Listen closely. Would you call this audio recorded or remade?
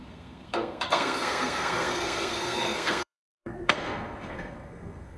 remade